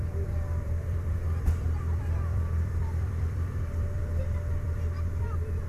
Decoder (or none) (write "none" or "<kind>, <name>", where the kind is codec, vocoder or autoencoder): vocoder, BigVGAN v2